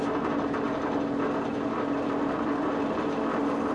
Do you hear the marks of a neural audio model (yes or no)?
no